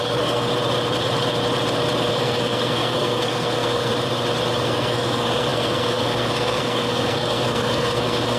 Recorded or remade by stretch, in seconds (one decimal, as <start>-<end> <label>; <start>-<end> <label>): 0.0-0.5 remade; 0.5-2.1 recorded; 2.1-3.9 remade; 3.9-4.6 recorded; 4.6-8.4 remade